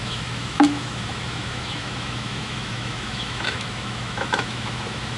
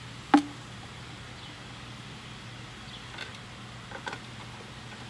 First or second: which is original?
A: second